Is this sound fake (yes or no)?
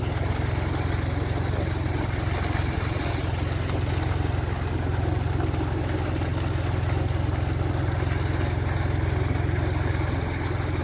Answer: no